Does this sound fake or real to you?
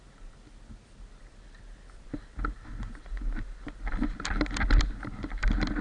real